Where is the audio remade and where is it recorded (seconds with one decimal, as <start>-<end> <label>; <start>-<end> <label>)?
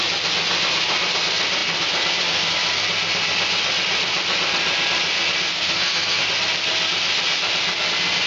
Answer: 0.0-5.5 recorded; 5.5-6.2 remade; 6.2-8.3 recorded